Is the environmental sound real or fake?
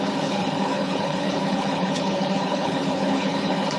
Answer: fake